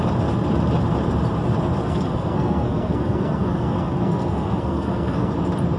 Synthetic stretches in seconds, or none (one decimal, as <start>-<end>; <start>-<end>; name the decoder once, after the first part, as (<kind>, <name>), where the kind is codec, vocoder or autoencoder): 1.8-5.3 (codec, SNAC)

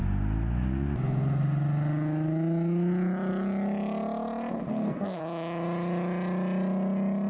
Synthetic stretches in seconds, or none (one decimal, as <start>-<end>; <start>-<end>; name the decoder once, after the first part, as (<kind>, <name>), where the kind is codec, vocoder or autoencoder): 4.7-5.2 (codec, SNAC)

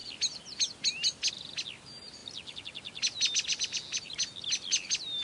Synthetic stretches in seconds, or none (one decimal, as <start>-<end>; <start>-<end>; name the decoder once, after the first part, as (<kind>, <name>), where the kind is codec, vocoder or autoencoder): none

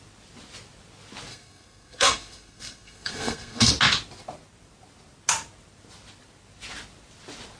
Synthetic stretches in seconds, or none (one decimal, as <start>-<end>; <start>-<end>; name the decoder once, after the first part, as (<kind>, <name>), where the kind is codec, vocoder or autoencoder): 1.3-3.7 (codec, SNAC)

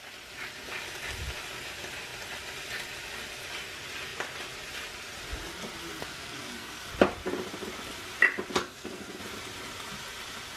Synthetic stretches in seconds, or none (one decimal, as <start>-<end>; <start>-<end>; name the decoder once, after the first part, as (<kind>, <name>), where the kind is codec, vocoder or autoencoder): 5.9-6.9 (codec, SNAC); 8.6-9.2

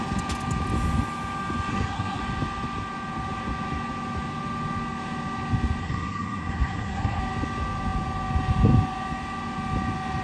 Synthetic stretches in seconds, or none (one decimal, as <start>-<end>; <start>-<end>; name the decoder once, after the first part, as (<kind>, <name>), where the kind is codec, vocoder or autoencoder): 1.7-2.2 (codec, SNAC); 5.8-7.2

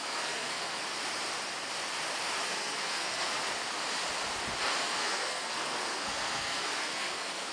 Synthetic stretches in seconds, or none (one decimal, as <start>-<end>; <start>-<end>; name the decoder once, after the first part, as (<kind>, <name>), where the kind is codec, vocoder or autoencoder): 0.0-0.8 (codec, SNAC); 2.4-3.4; 4.8-7.5

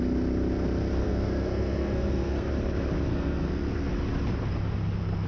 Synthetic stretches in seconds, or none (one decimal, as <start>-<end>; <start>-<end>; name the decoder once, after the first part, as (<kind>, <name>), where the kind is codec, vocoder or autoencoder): 1.0-2.5 (codec, SNAC); 3.1-3.9